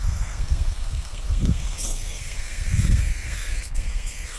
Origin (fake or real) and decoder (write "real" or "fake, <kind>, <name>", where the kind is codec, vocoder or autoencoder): fake, codec, SNAC